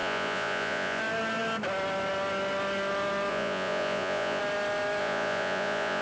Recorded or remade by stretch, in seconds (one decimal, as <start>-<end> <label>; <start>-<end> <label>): 0.0-1.0 remade; 1.0-3.3 recorded; 3.3-4.4 remade; 4.4-5.0 recorded; 5.0-6.0 remade

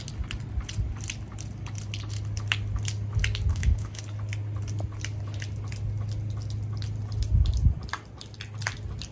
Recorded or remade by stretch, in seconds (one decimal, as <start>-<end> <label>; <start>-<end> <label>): 0.0-3.5 recorded; 3.5-4.0 remade; 4.0-9.1 recorded

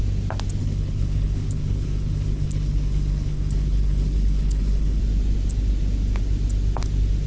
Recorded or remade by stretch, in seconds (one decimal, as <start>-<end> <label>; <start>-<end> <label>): 0.0-0.6 recorded; 0.6-5.0 remade; 5.0-7.3 recorded

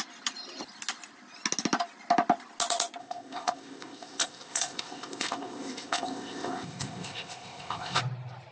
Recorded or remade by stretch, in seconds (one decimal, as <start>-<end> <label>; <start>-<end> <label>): 0.0-3.0 recorded; 3.0-8.0 remade; 8.0-8.5 recorded

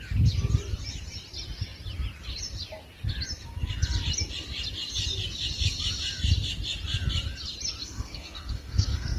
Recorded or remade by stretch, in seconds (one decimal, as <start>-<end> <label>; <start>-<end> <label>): 0.0-7.8 recorded; 7.8-9.2 remade

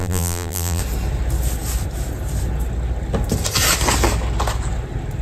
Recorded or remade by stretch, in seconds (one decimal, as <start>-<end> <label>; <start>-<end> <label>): 0.0-0.8 remade; 0.8-5.2 recorded

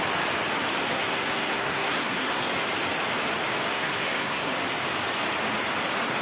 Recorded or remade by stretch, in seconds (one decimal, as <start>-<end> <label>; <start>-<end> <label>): 0.0-0.9 recorded; 0.9-2.5 remade; 2.5-3.7 recorded; 3.7-4.5 remade; 4.5-6.2 recorded